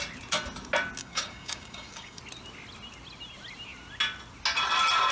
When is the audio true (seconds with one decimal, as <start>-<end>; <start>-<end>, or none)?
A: 0.0-1.0; 2.2-5.1